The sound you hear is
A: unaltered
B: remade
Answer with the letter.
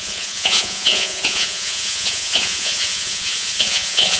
B